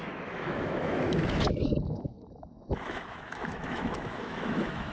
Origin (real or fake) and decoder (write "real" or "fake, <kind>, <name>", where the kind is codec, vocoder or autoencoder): fake, autoencoder, DAC-VAE